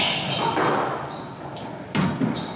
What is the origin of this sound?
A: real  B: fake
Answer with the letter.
A